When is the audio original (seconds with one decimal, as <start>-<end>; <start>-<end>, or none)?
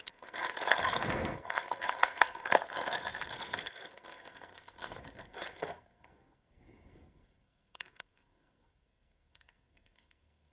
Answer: none